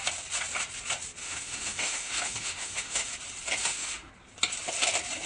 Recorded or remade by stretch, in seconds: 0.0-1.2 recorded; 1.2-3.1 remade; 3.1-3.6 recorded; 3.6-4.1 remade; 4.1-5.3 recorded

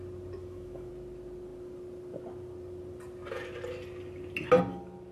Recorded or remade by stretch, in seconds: 0.0-0.4 recorded; 0.4-0.9 remade; 0.9-5.1 recorded

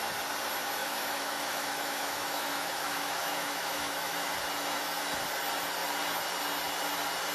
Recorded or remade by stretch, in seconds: 0.0-0.8 recorded; 0.8-4.3 remade; 4.3-7.3 recorded

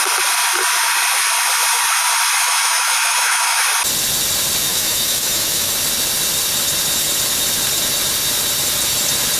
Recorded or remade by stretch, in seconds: 0.0-2.4 recorded; 2.4-3.6 remade; 3.6-4.7 recorded; 4.7-5.7 remade; 5.7-9.4 recorded